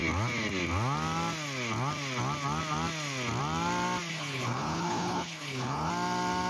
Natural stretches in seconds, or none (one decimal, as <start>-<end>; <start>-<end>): 0.0-4.1; 5.9-6.5